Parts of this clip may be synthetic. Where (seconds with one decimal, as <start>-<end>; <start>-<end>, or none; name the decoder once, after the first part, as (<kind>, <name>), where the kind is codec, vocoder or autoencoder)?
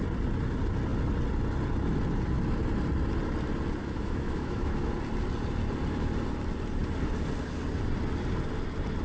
3.8-4.9 (autoencoder, DAC-VAE)